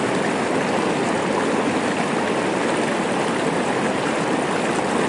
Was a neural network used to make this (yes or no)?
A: no